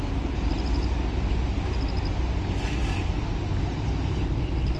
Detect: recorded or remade recorded